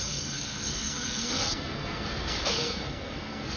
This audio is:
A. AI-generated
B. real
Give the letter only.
A